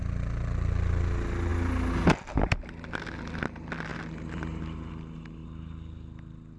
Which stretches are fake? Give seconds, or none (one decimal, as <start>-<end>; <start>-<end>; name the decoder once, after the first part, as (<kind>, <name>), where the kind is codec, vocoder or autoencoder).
none